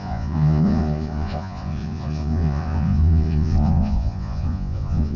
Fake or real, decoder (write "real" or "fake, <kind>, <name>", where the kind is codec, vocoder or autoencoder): fake, vocoder, Vocos